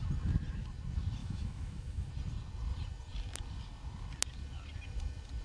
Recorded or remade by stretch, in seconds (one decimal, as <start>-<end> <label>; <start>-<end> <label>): 0.0-1.2 recorded; 1.2-2.1 remade; 2.1-5.4 recorded